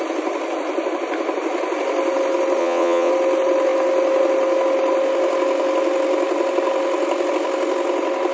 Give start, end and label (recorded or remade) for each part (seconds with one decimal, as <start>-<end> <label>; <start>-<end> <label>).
0.0-2.6 recorded; 2.6-3.1 remade; 3.1-8.3 recorded